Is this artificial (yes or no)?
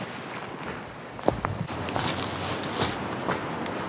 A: yes